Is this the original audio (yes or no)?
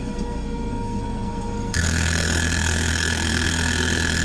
no